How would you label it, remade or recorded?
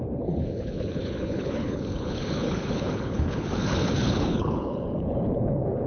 remade